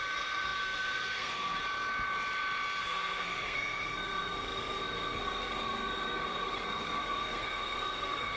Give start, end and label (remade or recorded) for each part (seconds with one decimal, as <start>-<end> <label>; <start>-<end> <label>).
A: 0.0-1.6 remade; 1.6-2.8 recorded; 2.8-8.4 remade